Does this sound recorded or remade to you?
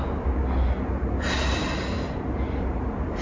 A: recorded